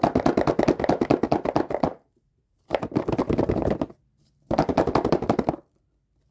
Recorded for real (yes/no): yes